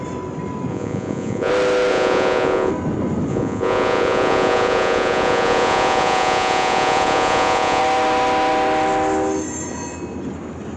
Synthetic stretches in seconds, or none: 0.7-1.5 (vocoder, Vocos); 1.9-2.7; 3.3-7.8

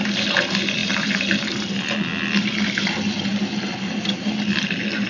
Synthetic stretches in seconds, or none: none

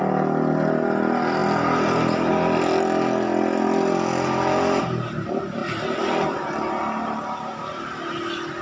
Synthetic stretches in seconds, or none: none

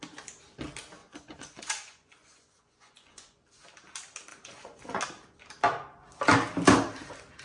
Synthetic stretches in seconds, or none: 1.0-3.4 (vocoder, Vocos); 4.3-5.0

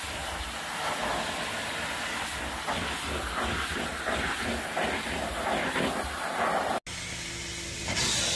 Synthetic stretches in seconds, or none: none

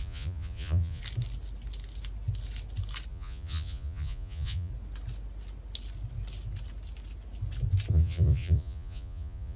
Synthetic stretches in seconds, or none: 0.0-1.0 (vocoder, Vocos); 3.1-4.7; 7.9-9.6

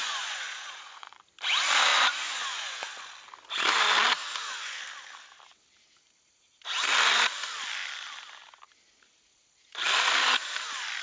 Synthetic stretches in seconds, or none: 0.0-1.2 (vocoder, Vocos); 1.9-3.1; 4.2-4.8